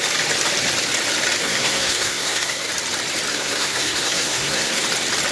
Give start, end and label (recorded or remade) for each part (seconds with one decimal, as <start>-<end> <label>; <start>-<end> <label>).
0.0-1.4 recorded; 1.4-2.7 remade; 2.7-3.3 recorded; 3.3-4.8 remade; 4.8-5.3 recorded